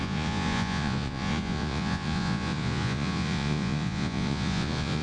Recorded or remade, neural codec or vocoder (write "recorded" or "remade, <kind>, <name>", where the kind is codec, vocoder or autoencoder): remade, vocoder, Vocos